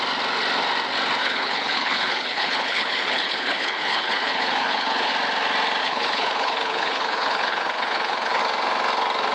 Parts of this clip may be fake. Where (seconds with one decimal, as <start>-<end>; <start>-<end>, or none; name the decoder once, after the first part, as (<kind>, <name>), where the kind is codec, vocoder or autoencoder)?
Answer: 1.2-5.1 (codec, HILCodec); 5.8-8.4